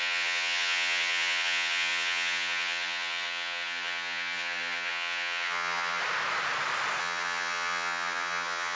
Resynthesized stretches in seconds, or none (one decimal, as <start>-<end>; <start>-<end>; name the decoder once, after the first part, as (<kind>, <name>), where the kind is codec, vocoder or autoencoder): 0.0-6.0 (vocoder, HiFi-GAN); 7.0-8.7